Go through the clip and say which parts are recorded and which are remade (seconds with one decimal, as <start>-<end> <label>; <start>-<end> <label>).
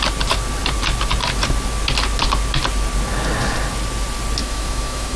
0.0-4.4 recorded; 4.4-5.2 remade